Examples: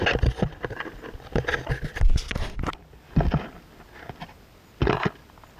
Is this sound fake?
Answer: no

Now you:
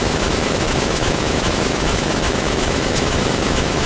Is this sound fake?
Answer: yes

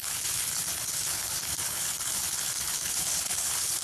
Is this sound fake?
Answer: yes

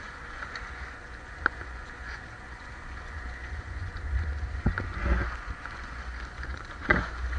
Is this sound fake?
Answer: yes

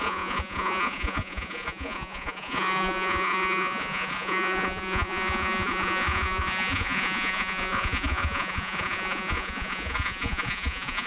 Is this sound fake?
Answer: yes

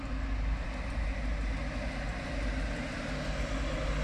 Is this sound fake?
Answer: no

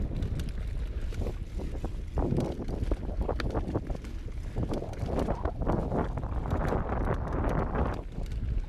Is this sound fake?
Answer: no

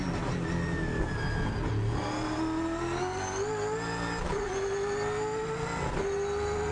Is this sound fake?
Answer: no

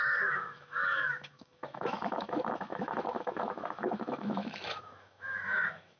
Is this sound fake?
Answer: yes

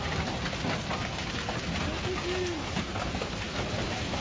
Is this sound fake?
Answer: no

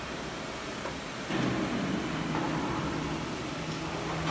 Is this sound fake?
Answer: no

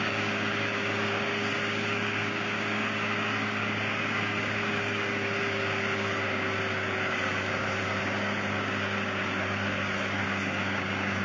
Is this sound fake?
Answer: yes